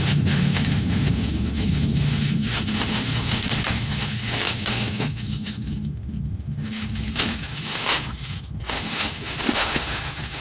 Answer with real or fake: fake